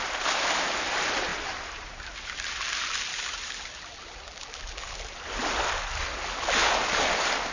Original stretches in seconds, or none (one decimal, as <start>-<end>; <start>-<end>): 0.0-1.3; 2.6-3.1; 3.6-4.8; 5.4-7.5